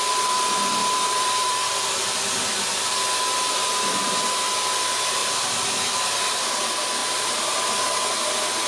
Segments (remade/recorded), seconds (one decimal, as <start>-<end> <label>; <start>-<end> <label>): 0.0-0.8 recorded; 0.8-1.8 remade; 1.8-5.2 recorded; 5.2-6.4 remade; 6.4-7.0 recorded; 7.0-7.6 remade; 7.6-8.7 recorded